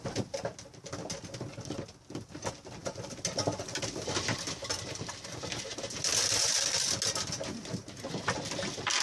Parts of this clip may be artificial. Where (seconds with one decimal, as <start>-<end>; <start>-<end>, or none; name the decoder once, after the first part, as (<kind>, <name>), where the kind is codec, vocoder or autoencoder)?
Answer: 2.8-6.2 (vocoder, BigVGAN v2)